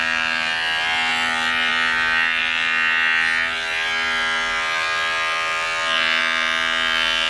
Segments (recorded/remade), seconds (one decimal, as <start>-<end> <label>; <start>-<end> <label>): 0.0-7.3 recorded